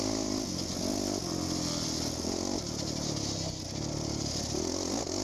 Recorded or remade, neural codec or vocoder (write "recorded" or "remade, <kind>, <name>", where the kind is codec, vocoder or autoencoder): recorded